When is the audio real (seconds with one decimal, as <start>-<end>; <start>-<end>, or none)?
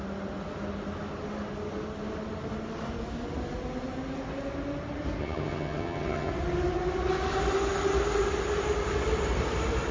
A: 0.0-5.2; 6.3-9.9